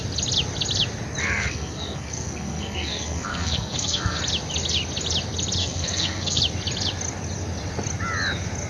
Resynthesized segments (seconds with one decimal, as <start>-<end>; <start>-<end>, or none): 1.2-4.2; 5.6-6.4